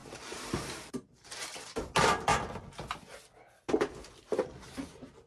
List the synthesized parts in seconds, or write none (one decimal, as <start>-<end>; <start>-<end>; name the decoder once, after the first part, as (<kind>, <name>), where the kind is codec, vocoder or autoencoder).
0.0-1.6 (vocoder, BigVGAN v2)